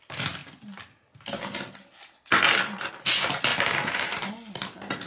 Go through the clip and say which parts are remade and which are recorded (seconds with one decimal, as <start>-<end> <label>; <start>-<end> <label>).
0.0-3.5 recorded; 3.5-4.3 remade; 4.3-5.1 recorded